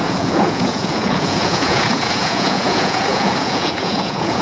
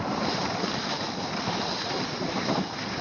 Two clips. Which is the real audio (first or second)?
second